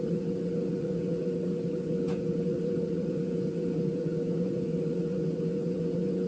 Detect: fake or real fake